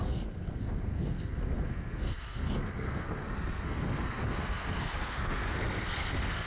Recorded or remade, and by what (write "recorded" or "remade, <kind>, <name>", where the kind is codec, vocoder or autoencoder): remade, codec, SNAC